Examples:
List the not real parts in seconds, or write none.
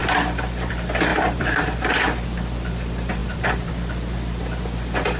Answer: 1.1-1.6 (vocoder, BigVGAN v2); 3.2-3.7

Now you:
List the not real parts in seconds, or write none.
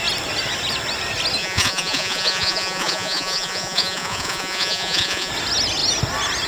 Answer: 1.4-5.3 (vocoder, Vocos)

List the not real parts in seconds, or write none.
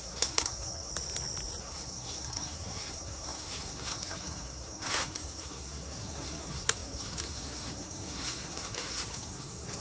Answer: 0.0-0.9 (codec, SNAC); 1.6-9.8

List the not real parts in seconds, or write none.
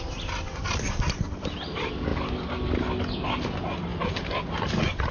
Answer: none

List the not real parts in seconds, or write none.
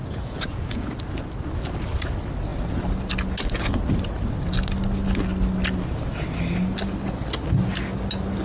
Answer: 0.0-0.9 (vocoder, Vocos)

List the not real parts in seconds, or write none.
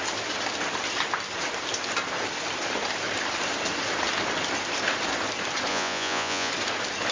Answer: 5.7-6.5 (vocoder, Vocos)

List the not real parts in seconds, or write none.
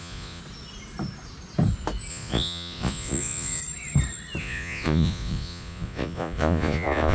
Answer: 0.0-0.4 (vocoder, Vocos); 2.1-3.6; 4.4-7.1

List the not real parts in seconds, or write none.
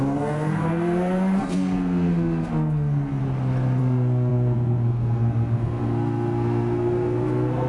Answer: 0.0-3.2 (codec, SNAC); 3.8-7.7